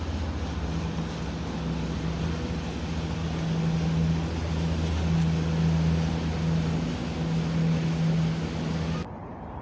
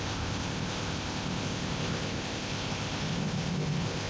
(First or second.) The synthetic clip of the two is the second